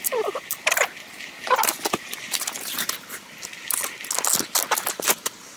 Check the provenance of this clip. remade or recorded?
recorded